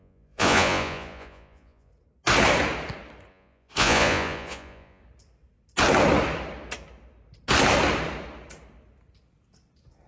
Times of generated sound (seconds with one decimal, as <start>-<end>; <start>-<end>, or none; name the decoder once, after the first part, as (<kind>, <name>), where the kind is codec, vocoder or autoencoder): 0.0-1.9 (vocoder, Vocos); 3.3-5.0